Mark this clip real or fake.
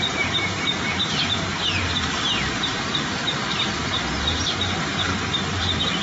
fake